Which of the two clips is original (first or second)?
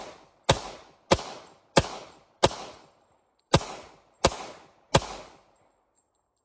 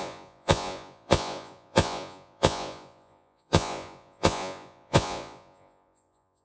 first